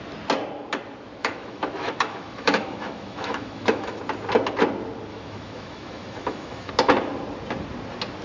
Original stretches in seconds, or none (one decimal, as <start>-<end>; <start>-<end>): 0.0-1.2; 4.0-5.1; 6.7-8.2